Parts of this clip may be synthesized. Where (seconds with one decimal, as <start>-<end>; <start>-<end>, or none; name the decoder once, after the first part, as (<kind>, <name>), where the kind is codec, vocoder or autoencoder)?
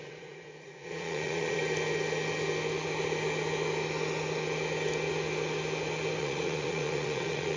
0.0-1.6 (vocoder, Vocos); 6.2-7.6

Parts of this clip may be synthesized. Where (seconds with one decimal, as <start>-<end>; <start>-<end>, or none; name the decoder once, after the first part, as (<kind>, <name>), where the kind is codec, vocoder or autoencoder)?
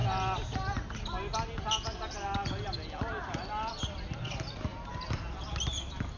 none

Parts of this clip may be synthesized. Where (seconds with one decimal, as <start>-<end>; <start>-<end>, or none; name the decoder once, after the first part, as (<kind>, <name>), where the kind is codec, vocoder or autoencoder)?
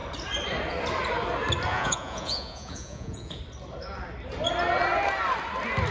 1.7-3.4 (vocoder, Vocos)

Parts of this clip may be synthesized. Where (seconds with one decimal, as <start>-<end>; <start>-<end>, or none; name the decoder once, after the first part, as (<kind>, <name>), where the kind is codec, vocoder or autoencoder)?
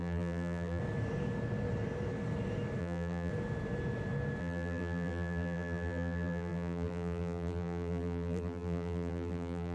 0.0-0.8 (vocoder, BigVGAN v2); 2.8-3.3; 4.4-9.7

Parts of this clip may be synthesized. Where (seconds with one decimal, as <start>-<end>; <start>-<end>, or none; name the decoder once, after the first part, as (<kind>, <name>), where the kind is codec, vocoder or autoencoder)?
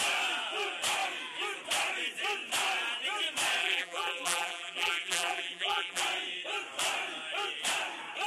3.6-6.0 (vocoder, BigVGAN v2)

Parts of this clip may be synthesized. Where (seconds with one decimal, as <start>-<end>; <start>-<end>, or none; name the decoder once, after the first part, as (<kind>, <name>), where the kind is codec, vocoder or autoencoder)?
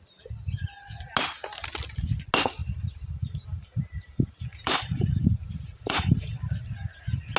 2.6-7.0 (vocoder, BigVGAN v2)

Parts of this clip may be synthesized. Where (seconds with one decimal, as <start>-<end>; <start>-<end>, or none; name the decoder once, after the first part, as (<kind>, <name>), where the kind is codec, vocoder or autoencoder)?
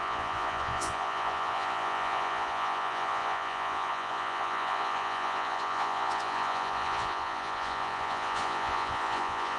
0.0-9.6 (vocoder, Vocos)